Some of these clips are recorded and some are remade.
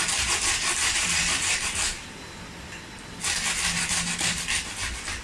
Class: recorded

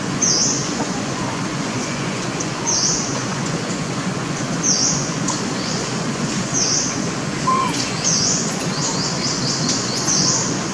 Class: remade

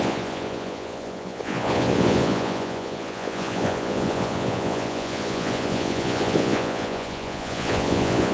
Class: remade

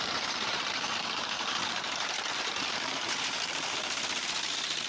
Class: remade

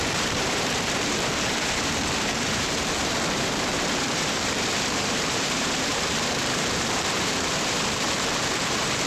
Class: remade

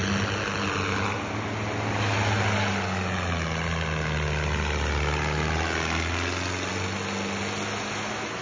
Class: recorded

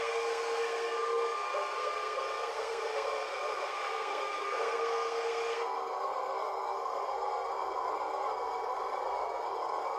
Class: remade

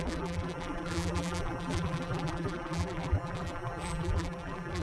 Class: remade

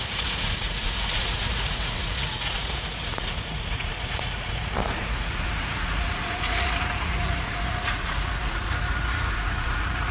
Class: remade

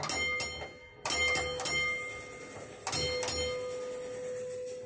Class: recorded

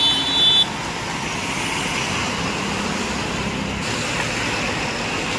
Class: recorded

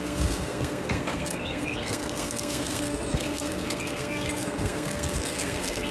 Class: remade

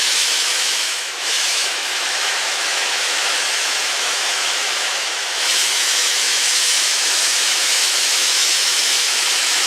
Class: remade